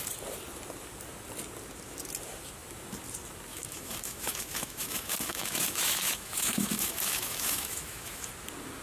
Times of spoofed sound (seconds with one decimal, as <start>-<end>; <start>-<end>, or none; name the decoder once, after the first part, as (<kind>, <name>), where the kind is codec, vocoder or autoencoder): 3.5-8.3 (autoencoder, DAC-VAE)